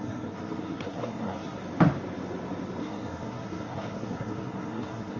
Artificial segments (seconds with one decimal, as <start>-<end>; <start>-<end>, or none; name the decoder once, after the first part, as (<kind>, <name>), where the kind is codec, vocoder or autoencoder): 0.0-1.6 (codec, SNAC); 2.8-5.2